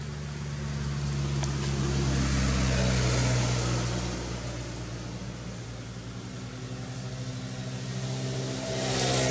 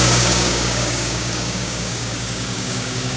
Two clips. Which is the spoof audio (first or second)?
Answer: second